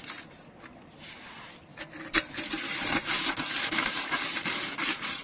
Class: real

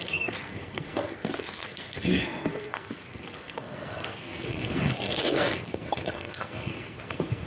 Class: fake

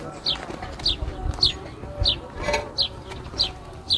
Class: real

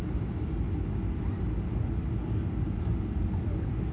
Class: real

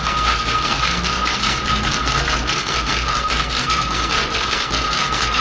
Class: fake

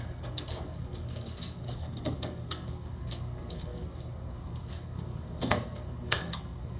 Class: fake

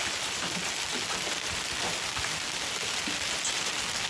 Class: real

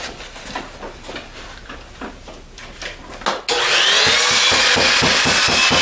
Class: real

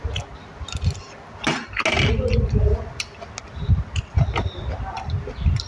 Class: real